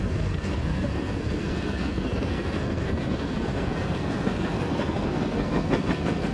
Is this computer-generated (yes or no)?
yes